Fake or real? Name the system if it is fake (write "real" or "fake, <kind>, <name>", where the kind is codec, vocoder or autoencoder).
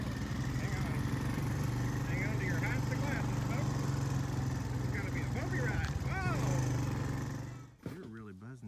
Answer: real